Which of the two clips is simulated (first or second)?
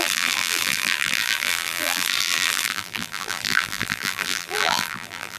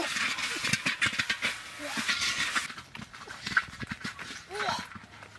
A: first